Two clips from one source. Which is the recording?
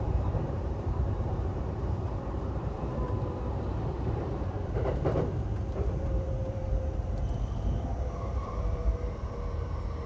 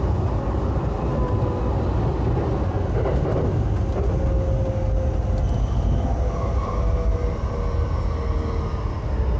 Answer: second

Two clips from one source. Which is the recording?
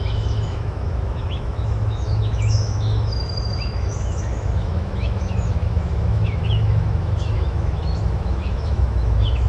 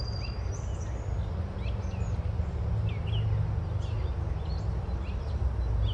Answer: second